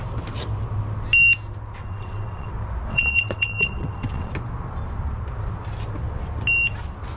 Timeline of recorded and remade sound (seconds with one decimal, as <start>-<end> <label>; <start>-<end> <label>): 0.0-1.8 recorded; 1.8-2.5 remade; 2.5-2.9 recorded; 2.9-4.3 remade; 4.3-7.2 recorded